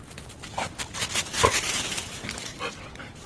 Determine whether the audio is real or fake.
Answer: real